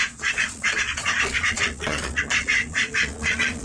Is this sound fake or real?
fake